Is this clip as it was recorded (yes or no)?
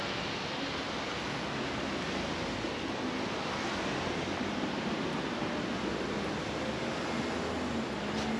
yes